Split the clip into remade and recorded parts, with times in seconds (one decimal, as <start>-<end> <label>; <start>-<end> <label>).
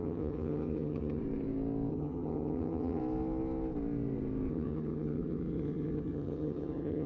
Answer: 0.0-1.2 remade; 1.2-1.9 recorded; 1.9-3.0 remade; 3.0-4.5 recorded; 4.5-7.1 remade